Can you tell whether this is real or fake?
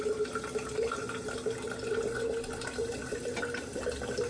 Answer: real